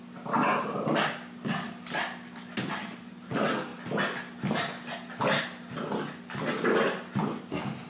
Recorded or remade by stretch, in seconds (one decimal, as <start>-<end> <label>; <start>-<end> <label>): 0.0-7.9 recorded